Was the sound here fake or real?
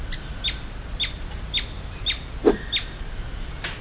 real